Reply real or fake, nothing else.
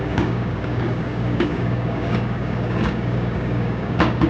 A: fake